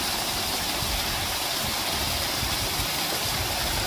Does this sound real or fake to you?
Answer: real